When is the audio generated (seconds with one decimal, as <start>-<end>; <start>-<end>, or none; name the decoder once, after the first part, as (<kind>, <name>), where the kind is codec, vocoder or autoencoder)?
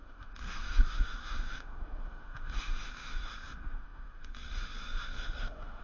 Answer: 0.0-5.8 (autoencoder, DAC-VAE)